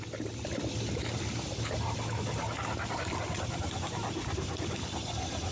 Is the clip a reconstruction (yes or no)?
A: no